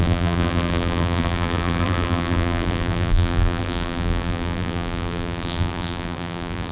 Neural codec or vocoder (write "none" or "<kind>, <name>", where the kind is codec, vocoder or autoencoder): vocoder, BigVGAN v2